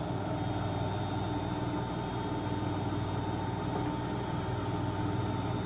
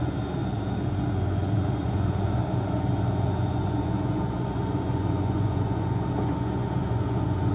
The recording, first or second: first